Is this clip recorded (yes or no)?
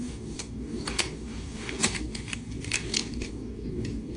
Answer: no